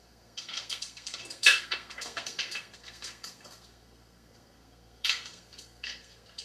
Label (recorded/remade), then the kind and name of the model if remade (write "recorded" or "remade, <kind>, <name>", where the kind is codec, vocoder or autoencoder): remade, codec, SNAC